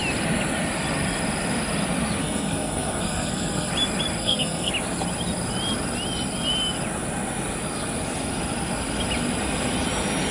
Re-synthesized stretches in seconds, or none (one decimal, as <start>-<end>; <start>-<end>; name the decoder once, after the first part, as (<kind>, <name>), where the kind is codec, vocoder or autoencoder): 2.2-3.7 (codec, SNAC); 4.2-4.7